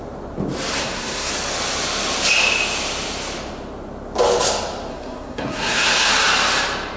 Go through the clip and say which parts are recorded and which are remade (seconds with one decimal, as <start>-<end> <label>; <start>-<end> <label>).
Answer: 0.0-0.7 recorded; 0.7-1.3 remade; 1.3-4.9 recorded; 4.9-6.1 remade; 6.1-7.0 recorded